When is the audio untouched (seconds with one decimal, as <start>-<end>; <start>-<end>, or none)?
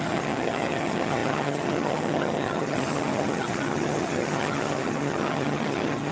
none